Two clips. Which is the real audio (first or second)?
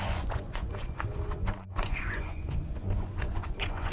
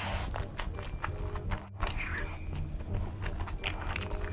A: second